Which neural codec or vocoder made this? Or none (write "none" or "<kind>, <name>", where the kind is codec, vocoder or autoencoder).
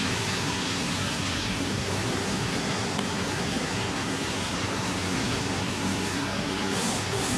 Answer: codec, SNAC